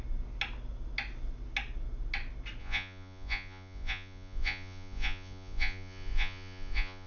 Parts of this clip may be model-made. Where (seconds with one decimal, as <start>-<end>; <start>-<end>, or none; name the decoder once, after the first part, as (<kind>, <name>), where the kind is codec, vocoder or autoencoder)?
2.6-7.1 (vocoder, Vocos)